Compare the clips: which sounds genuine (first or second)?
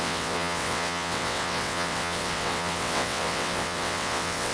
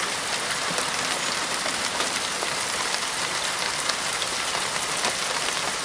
second